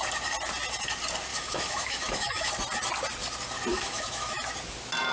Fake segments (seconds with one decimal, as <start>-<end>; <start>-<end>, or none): 1.3-2.5; 3.7-4.4